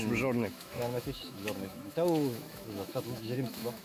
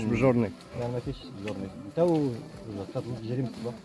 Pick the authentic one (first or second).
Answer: second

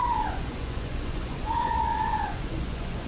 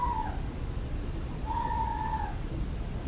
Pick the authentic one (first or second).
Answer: second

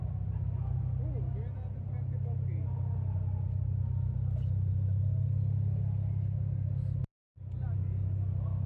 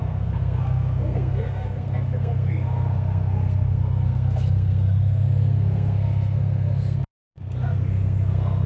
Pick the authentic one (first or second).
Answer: first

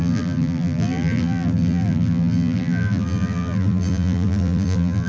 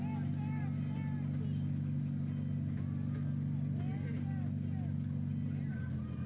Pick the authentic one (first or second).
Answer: second